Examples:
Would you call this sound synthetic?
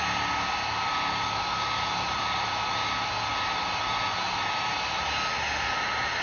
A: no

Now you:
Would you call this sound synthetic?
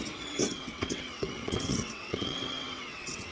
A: yes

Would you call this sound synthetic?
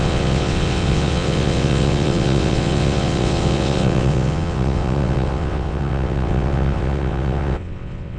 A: yes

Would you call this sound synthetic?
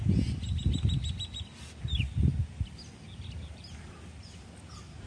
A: no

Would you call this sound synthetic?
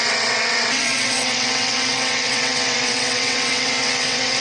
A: yes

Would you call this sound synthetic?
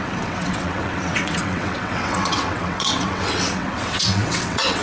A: yes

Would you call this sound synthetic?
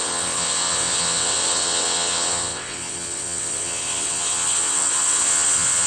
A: yes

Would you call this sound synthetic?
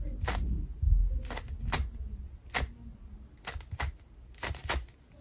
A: no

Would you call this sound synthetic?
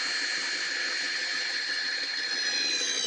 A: no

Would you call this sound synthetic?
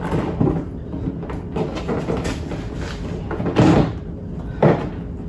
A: no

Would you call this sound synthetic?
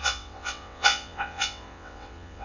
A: yes